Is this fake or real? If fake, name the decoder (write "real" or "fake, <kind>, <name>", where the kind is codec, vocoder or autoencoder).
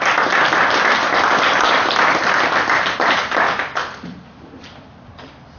real